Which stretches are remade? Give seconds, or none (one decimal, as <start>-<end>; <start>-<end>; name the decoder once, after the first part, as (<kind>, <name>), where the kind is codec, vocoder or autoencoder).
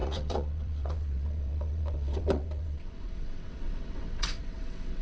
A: 0.0-5.0 (vocoder, WaveNeXt)